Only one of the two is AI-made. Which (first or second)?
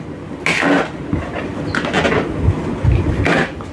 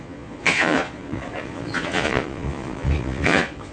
second